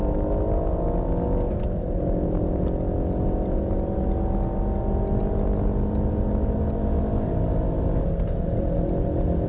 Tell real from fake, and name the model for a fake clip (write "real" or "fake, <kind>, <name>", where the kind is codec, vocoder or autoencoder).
real